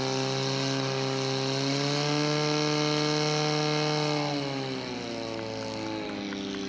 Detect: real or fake real